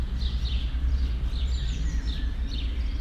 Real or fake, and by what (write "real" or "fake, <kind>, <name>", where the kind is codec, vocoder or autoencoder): real